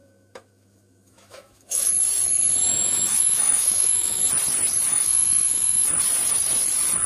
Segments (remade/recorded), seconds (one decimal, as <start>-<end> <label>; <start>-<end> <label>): 0.0-1.9 remade; 1.9-2.7 recorded; 2.7-4.2 remade; 4.2-4.9 recorded; 4.9-5.9 remade; 5.9-7.1 recorded